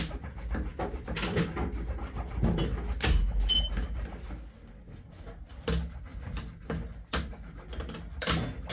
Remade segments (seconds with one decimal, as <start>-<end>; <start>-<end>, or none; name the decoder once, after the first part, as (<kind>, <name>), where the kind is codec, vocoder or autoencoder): none

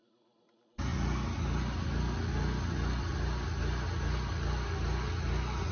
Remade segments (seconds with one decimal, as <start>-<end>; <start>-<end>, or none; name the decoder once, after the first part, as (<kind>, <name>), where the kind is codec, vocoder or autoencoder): none

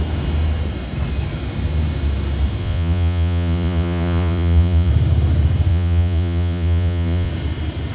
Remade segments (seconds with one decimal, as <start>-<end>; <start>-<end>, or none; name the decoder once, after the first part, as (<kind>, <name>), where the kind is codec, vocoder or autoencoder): 2.6-4.9 (vocoder, Vocos); 5.7-7.3

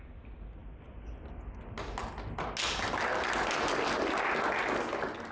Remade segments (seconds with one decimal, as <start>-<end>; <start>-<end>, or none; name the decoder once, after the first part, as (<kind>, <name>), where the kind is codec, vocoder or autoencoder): none

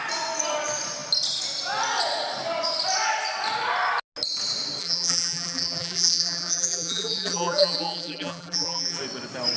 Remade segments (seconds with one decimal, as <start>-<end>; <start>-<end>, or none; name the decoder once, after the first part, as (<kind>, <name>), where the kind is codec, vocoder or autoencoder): 4.8-9.0 (vocoder, BigVGAN v2)

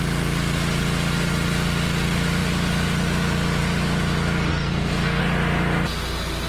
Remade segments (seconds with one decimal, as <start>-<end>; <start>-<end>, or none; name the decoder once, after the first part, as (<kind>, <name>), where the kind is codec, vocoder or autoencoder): 4.5-5.2 (codec, SNAC)

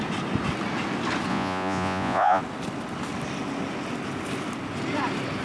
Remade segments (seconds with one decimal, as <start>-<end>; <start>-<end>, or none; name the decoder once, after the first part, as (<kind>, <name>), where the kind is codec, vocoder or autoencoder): 1.3-2.4 (vocoder, Vocos)

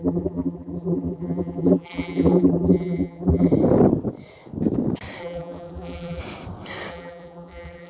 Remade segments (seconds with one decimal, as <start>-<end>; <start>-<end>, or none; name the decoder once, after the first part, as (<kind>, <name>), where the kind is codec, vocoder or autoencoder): 0.0-3.5 (vocoder, BigVGAN v2); 5.2-6.2; 6.9-7.9